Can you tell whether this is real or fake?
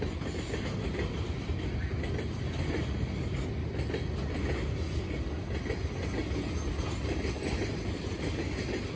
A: real